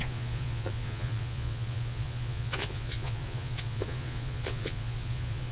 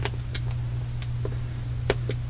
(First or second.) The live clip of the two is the second